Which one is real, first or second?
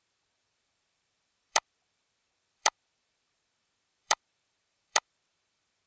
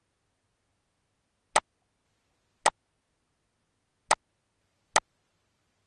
second